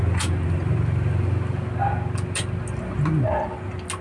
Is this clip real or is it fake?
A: real